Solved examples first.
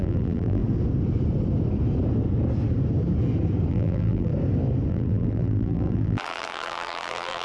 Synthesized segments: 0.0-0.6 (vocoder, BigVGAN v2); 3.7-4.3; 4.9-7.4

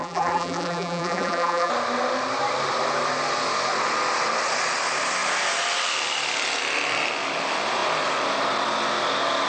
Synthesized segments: 0.0-1.7 (vocoder, BigVGAN v2)

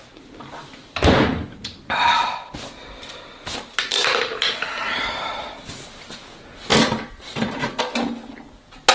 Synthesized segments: 3.9-6.2 (vocoder, BigVGAN v2); 6.7-7.8

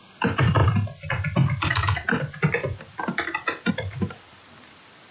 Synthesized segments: 0.0-5.1 (vocoder, BigVGAN v2)